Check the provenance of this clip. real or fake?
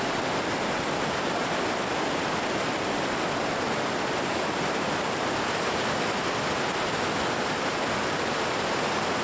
real